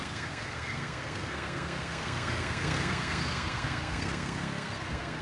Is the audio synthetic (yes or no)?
yes